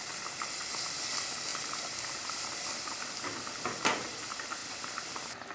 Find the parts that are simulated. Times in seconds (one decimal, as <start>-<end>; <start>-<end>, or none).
1.5-3.2